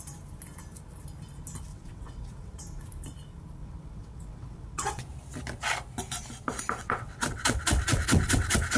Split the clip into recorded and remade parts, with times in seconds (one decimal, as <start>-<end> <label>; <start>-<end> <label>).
0.0-1.7 recorded; 1.7-2.6 remade; 2.6-3.6 recorded; 3.6-5.0 remade; 5.0-6.8 recorded; 6.8-8.8 remade